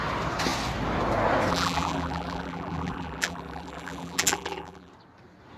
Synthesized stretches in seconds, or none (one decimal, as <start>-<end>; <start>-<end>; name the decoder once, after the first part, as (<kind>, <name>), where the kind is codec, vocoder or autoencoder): 1.5-4.9 (vocoder, BigVGAN v2)